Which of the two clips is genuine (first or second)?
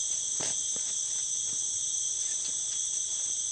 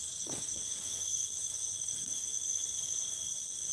first